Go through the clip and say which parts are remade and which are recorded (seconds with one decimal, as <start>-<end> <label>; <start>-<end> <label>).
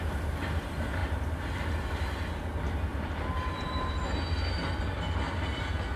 0.0-1.0 recorded; 1.0-1.6 remade; 1.6-2.9 recorded; 2.9-4.1 remade; 4.1-6.0 recorded